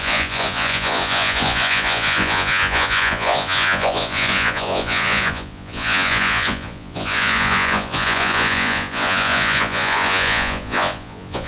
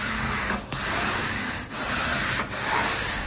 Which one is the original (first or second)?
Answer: second